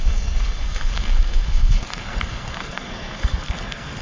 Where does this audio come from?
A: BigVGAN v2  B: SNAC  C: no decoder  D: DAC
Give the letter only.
B